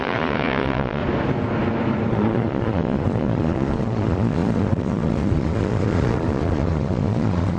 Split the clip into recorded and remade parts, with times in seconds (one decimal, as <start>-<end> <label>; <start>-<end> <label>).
0.0-1.0 remade; 1.0-2.1 recorded; 2.1-7.6 remade